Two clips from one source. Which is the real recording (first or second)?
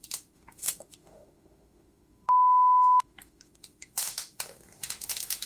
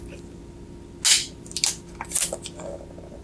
second